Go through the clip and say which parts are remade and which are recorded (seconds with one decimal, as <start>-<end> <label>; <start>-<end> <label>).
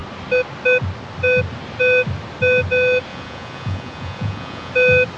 0.0-3.1 recorded; 3.1-4.7 remade; 4.7-5.2 recorded